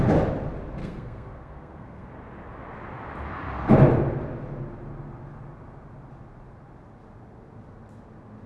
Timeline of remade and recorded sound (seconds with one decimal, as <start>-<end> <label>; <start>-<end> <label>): 0.0-0.8 recorded; 0.8-2.1 remade; 2.1-8.5 recorded